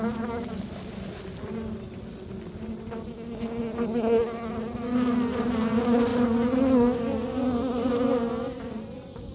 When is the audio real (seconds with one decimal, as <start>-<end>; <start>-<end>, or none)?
0.0-9.3